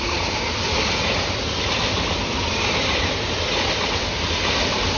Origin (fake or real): real